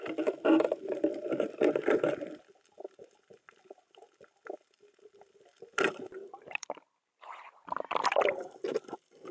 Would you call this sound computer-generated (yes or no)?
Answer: yes